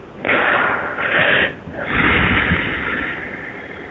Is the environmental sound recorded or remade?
recorded